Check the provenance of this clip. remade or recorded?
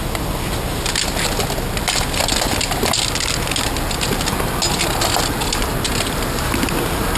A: recorded